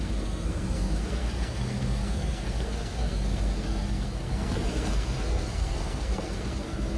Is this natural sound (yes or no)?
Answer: no